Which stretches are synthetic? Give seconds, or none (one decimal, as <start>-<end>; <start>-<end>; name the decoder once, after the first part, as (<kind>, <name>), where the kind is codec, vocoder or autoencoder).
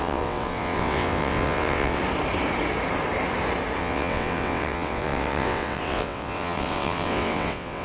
0.0-2.0 (vocoder, WaveNeXt); 3.8-7.8